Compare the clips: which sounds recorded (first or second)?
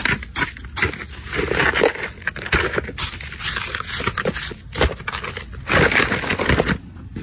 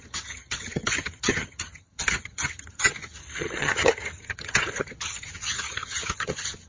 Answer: first